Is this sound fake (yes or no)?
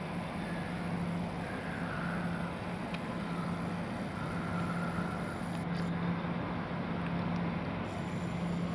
no